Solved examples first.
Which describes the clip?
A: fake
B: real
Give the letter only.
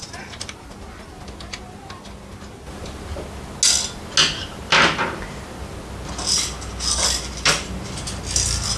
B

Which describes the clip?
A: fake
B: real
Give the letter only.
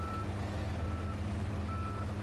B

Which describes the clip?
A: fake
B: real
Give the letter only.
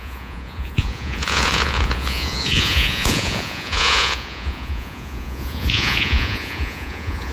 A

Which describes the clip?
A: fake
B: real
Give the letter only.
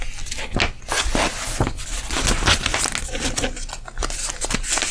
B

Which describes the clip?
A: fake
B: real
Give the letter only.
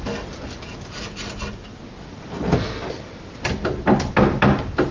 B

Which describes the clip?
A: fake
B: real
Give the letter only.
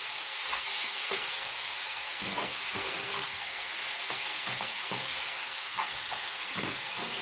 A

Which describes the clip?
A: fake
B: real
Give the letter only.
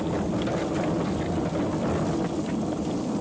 B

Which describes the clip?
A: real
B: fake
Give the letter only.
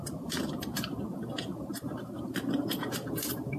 B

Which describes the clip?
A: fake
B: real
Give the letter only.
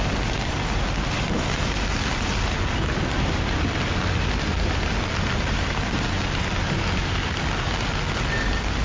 B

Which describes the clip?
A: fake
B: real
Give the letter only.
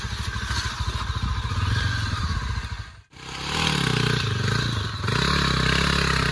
B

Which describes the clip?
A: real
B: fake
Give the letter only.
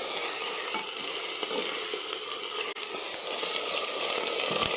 A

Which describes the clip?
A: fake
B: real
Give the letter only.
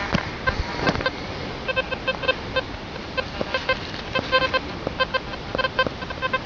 A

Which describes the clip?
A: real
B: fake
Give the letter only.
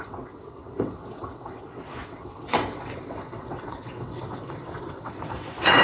B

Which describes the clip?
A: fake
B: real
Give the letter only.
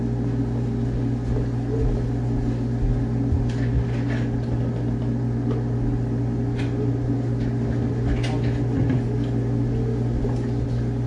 B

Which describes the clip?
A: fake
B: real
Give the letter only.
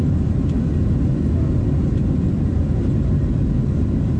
B